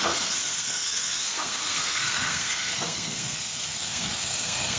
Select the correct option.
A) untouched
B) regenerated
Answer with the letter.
B